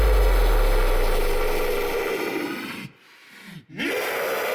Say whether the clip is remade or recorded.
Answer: recorded